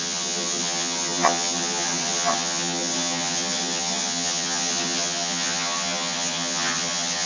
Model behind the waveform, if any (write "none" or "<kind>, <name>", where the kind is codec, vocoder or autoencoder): vocoder, HiFi-GAN